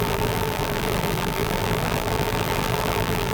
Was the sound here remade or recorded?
remade